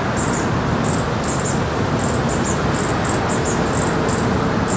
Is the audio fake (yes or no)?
no